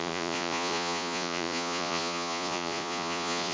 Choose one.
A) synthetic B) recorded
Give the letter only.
A